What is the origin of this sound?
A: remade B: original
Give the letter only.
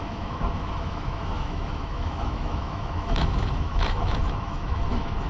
A